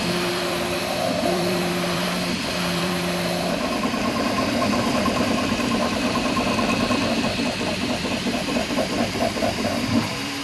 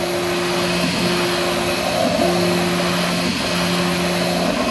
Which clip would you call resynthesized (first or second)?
first